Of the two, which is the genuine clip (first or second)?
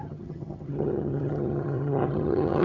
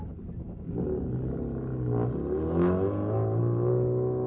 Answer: second